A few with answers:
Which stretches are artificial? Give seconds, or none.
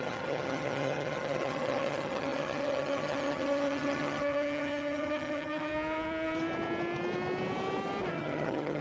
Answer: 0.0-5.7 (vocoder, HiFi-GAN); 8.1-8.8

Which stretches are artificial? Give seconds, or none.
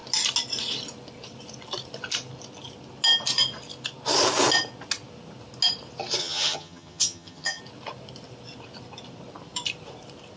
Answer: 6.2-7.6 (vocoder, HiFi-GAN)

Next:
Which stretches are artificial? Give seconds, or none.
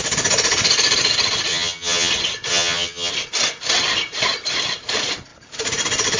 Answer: 1.5-2.1 (vocoder, HiFi-GAN); 2.5-3.1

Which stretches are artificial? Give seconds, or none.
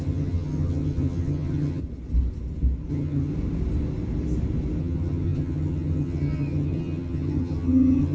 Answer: 0.0-1.8 (vocoder, HiFi-GAN); 2.9-3.3; 4.8-8.1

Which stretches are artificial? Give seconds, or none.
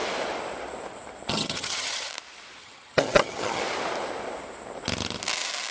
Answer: 1.3-2.1 (vocoder, HiFi-GAN); 2.6-3.6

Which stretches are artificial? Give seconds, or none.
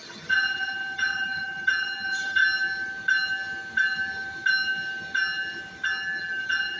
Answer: 0.0-2.4 (vocoder, HiFi-GAN); 6.2-6.8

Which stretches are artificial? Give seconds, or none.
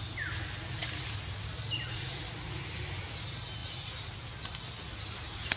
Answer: none